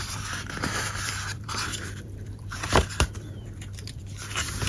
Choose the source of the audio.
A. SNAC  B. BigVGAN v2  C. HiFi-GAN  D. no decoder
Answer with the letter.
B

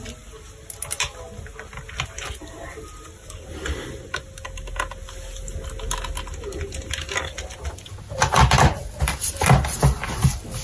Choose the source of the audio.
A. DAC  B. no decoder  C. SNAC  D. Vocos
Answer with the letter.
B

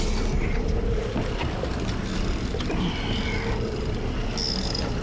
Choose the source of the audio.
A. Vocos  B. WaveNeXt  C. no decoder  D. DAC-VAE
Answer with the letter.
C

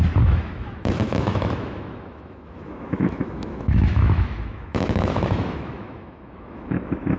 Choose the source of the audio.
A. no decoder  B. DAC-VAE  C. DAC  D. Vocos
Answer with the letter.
B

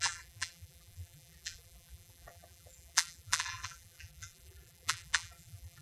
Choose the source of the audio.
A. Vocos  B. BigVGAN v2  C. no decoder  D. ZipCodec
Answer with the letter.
B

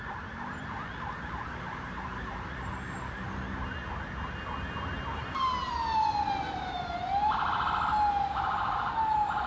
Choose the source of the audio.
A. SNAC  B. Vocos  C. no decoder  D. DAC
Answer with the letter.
C